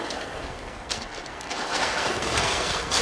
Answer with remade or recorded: remade